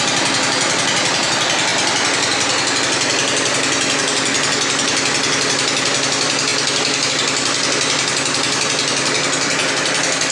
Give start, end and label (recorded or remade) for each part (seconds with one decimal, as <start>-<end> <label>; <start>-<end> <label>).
0.0-10.3 recorded